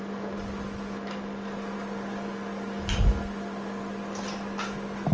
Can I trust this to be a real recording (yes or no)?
yes